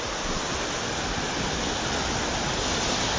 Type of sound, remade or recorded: recorded